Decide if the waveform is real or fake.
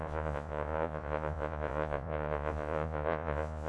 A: fake